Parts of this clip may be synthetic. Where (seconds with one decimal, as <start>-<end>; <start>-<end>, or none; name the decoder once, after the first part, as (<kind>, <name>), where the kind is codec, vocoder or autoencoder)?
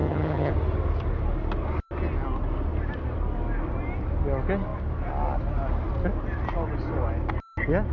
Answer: 0.0-0.5 (vocoder, HiFi-GAN)